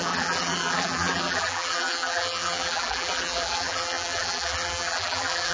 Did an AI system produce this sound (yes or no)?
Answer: yes